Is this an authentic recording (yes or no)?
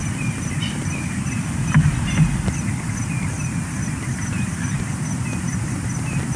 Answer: yes